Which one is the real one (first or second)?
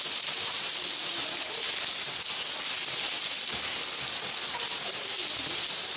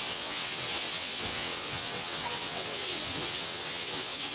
first